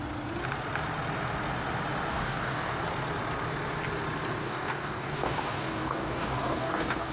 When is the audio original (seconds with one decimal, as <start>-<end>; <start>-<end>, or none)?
0.0-2.1; 2.7-4.4

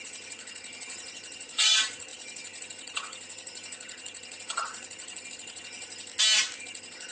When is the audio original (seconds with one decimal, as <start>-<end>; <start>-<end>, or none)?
6.1-6.6

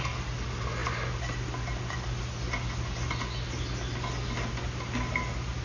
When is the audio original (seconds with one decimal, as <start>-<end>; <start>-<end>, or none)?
0.0-5.6

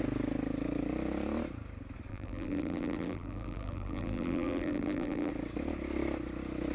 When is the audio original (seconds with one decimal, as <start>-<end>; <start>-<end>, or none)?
0.0-2.1; 5.3-6.7

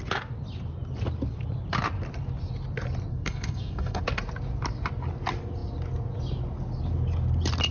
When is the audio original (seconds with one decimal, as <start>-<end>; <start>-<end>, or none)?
0.0-3.1; 4.0-7.7

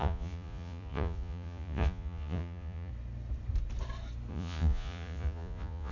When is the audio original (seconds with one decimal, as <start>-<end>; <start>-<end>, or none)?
2.9-4.3

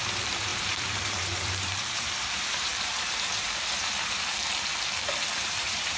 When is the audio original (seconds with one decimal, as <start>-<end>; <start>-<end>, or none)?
4.7-5.4